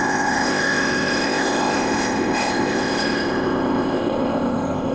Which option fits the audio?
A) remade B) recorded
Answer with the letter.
A